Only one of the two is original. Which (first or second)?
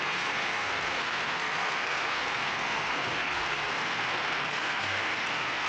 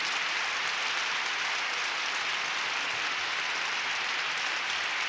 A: second